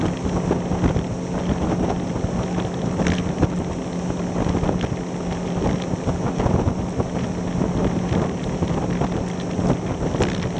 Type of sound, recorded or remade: recorded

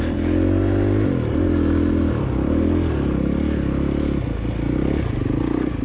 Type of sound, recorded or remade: recorded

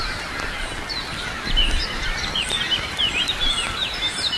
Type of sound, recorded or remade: remade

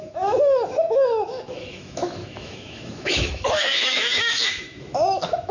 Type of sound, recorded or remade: remade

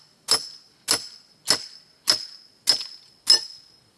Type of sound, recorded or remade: recorded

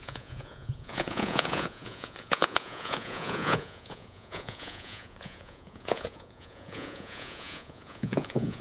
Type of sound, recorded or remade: remade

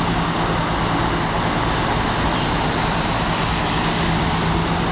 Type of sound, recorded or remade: recorded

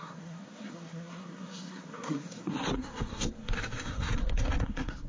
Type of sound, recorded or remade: remade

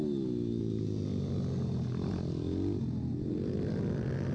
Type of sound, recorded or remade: recorded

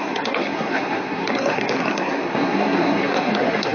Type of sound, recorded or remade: remade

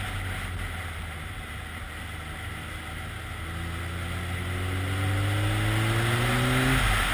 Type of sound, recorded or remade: recorded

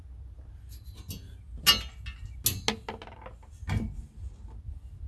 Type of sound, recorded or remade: recorded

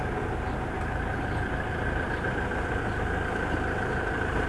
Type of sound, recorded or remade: recorded